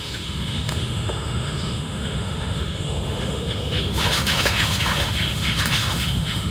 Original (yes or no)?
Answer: no